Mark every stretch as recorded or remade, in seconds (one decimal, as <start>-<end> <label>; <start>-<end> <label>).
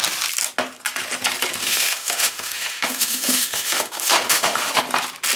0.0-1.6 recorded; 1.6-4.8 remade; 4.8-5.4 recorded